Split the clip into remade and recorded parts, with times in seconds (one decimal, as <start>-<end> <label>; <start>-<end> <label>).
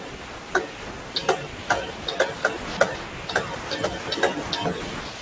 0.0-5.2 recorded